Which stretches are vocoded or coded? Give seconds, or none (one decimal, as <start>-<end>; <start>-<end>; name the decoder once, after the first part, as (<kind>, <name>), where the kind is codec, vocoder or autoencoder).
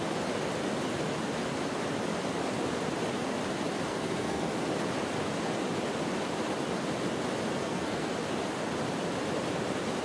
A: 3.9-4.5 (codec, SNAC); 7.5-8.1